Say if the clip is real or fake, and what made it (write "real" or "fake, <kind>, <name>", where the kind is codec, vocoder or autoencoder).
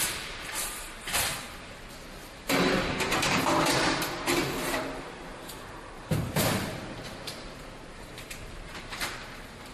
fake, vocoder, BigVGAN v2